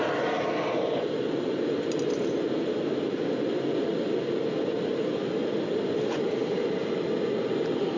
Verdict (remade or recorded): recorded